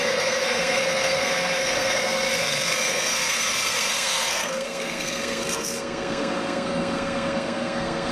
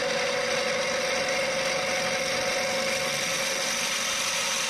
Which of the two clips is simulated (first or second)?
first